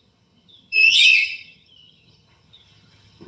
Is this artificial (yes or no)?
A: yes